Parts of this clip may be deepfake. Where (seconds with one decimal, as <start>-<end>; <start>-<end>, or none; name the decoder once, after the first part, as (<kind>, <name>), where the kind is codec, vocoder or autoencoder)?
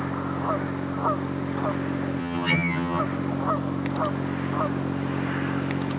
2.2-3.0 (vocoder, HiFi-GAN)